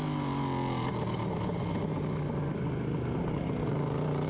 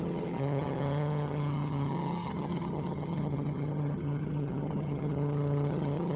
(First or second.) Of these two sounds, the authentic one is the first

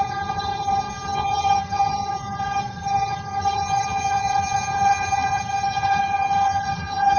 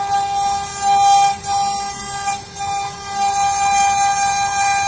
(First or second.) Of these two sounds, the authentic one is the second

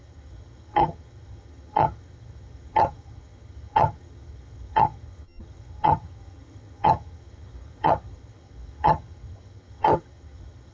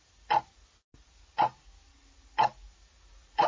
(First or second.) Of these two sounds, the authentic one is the second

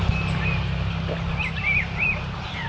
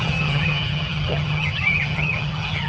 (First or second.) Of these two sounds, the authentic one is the first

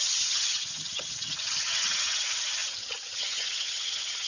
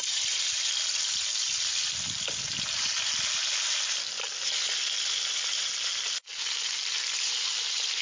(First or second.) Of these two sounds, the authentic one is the second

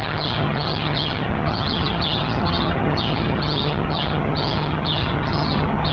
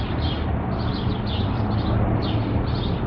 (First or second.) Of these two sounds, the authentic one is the second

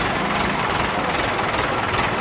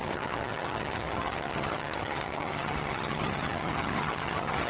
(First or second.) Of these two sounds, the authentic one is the first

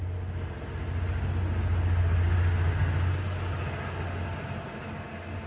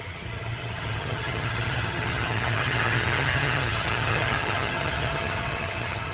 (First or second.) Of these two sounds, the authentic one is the first